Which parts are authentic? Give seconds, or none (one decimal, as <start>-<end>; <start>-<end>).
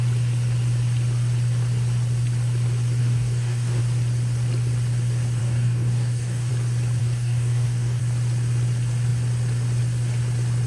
0.0-3.0; 3.8-5.4; 6.5-7.0; 8.0-10.7